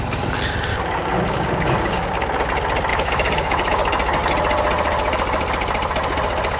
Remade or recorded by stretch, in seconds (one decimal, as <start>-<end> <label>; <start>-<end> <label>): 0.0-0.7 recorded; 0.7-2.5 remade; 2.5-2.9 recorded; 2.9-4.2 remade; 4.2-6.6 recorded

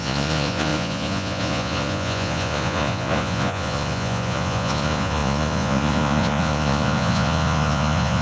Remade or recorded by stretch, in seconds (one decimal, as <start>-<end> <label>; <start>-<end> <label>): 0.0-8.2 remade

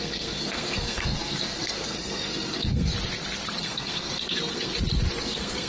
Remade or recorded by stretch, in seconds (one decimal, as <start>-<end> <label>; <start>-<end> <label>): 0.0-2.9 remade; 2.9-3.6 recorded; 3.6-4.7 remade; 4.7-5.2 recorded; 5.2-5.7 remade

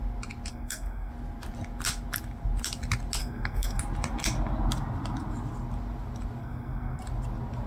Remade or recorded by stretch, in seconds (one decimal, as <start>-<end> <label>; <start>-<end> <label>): 0.0-0.5 recorded; 0.5-1.1 remade; 1.1-3.2 recorded; 3.2-3.8 remade; 3.8-6.4 recorded; 6.4-7.0 remade; 7.0-7.7 recorded